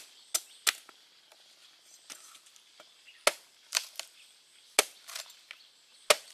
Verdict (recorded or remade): recorded